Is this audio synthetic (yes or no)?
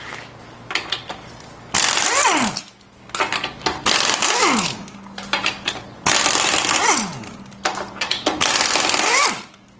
no